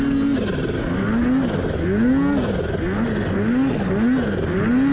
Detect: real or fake real